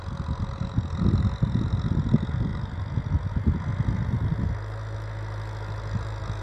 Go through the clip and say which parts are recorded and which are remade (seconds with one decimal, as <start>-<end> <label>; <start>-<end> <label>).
0.0-6.4 recorded